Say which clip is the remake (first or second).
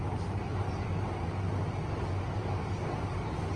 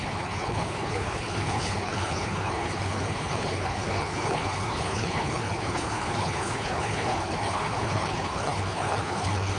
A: second